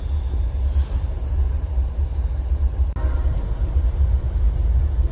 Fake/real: real